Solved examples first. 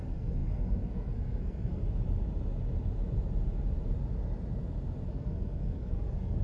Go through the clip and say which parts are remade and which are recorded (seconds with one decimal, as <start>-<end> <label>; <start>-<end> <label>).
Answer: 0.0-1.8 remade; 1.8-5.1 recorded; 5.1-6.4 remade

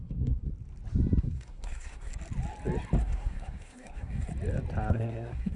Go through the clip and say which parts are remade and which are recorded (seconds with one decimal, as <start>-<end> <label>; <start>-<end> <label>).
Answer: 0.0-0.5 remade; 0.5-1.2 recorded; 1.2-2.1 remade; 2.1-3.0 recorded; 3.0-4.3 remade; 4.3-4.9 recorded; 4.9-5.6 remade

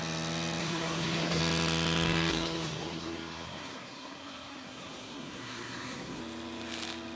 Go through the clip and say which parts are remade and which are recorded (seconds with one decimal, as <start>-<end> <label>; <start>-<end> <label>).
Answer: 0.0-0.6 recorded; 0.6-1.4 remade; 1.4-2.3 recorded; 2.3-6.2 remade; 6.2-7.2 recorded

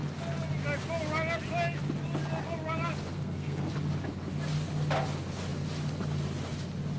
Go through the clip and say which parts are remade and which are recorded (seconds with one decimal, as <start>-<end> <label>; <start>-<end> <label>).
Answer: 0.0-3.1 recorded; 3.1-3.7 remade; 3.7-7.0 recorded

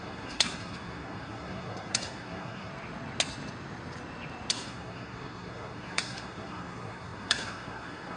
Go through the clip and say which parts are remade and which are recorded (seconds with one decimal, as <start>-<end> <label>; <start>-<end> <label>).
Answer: 0.0-2.7 remade; 2.7-4.5 recorded; 4.5-8.2 remade

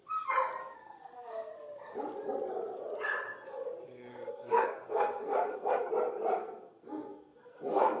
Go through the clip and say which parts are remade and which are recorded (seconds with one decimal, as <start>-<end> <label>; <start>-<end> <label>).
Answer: 0.0-0.6 recorded; 0.6-1.5 remade; 1.5-4.1 recorded; 4.1-5.9 remade; 5.9-6.4 recorded; 6.4-8.0 remade